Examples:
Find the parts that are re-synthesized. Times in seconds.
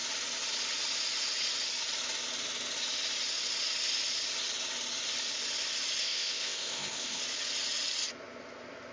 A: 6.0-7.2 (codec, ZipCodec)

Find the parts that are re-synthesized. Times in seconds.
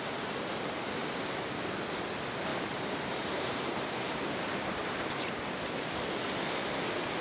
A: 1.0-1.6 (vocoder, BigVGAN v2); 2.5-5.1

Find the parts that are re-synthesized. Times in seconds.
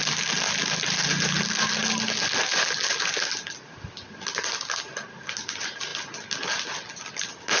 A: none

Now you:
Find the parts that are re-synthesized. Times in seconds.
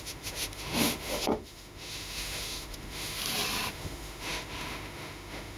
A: 0.0-3.2 (autoencoder, DAC-VAE); 3.7-5.6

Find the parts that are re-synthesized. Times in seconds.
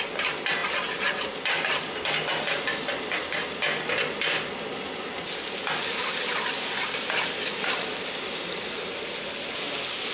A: none